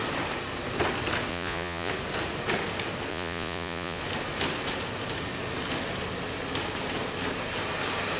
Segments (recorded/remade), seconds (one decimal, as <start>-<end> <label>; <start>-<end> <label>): 0.0-1.3 recorded; 1.3-1.9 remade; 1.9-3.1 recorded; 3.1-4.0 remade; 4.0-8.2 recorded